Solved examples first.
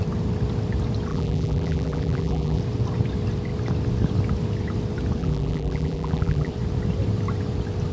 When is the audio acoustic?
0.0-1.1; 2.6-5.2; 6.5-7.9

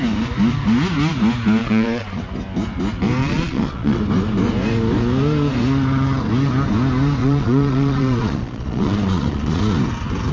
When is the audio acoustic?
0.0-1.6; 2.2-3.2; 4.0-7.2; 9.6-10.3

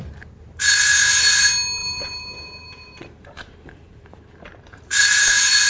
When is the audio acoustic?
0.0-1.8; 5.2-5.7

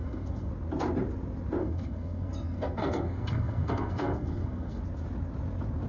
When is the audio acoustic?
0.5-1.6; 4.8-5.9